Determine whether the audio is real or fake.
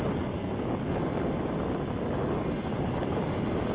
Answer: real